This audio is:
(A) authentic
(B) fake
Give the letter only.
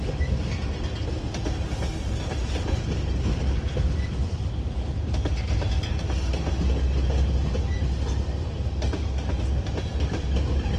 A